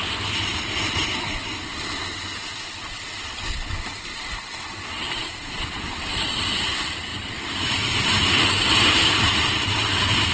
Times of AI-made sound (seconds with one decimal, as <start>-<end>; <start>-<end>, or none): 0.0-1.1; 4.1-10.3